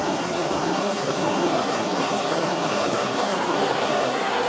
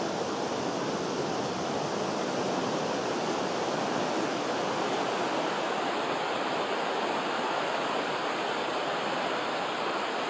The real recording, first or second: second